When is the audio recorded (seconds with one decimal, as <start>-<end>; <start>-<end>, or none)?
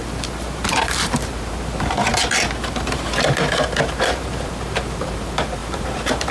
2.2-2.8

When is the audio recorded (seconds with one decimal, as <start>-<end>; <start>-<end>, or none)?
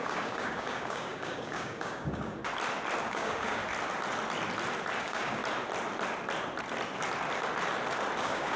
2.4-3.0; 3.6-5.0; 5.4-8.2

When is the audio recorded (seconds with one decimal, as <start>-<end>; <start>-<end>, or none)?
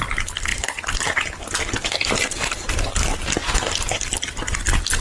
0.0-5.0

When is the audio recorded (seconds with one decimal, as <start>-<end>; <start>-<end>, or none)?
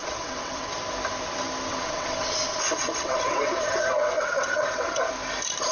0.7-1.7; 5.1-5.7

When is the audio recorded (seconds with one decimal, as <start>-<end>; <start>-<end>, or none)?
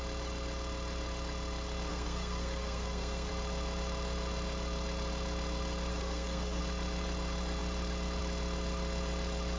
0.0-1.9; 3.3-5.9; 6.6-9.6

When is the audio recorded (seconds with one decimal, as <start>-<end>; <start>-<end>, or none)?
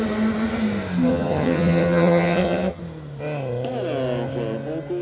0.0-1.1; 2.8-5.0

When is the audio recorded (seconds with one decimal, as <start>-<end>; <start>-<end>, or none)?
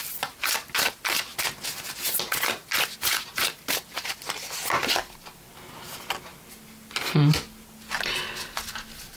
0.0-9.2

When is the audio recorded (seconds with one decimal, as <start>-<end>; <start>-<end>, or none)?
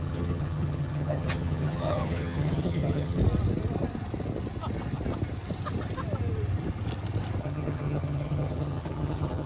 3.2-7.4